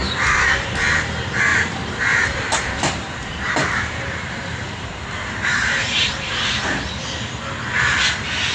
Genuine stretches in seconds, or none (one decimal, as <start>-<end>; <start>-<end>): 0.0-1.5; 6.5-8.5